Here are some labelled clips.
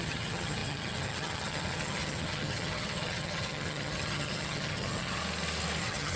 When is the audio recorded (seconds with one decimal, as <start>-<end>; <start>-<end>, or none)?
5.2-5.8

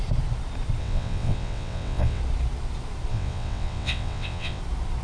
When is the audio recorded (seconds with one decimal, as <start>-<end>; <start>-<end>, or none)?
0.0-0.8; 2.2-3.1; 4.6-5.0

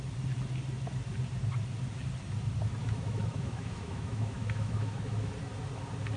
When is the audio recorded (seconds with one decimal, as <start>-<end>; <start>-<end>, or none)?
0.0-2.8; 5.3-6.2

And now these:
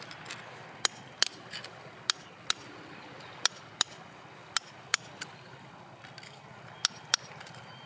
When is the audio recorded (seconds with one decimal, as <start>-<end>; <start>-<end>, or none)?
0.0-7.9

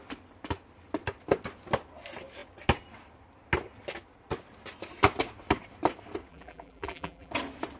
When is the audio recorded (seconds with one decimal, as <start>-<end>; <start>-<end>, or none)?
0.0-6.3; 7.3-7.8